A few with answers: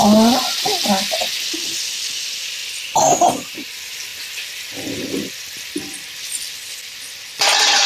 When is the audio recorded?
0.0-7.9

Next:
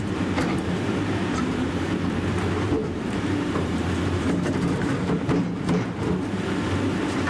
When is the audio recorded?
none

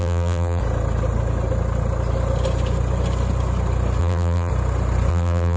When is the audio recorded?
0.6-4.0; 4.5-5.1

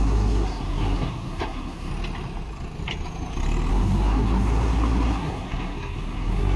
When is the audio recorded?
1.9-3.7